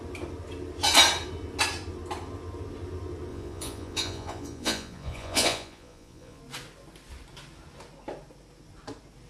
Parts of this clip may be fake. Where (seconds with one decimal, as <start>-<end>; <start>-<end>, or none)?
3.3-6.4